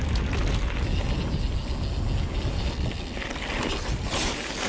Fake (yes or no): no